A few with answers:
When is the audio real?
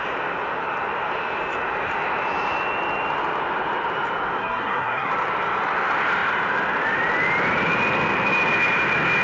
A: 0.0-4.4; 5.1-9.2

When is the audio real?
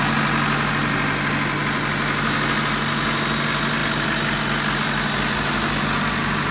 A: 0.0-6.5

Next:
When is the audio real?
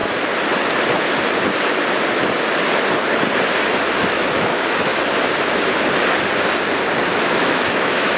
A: 0.0-4.0; 4.9-7.2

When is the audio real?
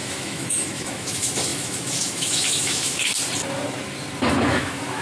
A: 3.1-4.3